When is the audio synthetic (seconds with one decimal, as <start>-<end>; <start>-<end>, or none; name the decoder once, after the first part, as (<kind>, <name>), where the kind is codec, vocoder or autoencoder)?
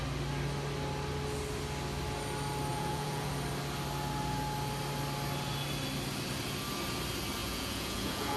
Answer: 2.7-3.3 (vocoder, Vocos); 7.4-8.4